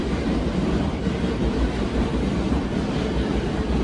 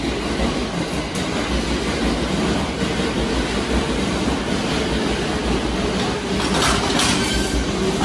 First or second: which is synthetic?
first